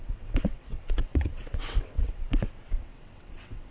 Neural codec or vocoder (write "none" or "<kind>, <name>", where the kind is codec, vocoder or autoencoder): vocoder, WaveNeXt